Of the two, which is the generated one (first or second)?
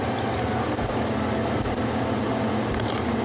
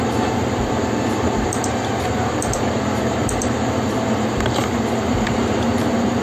second